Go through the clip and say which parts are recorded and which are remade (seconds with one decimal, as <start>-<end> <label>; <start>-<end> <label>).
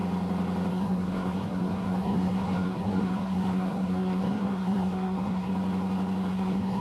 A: 0.0-0.7 recorded; 0.7-5.5 remade; 5.5-6.3 recorded; 6.3-6.8 remade